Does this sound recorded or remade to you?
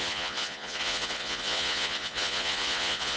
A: remade